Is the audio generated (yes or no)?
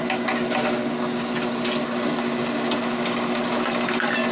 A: no